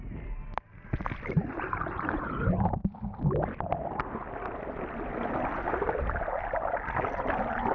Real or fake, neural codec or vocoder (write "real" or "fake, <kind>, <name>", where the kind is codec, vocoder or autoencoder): real